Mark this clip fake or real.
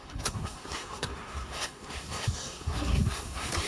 fake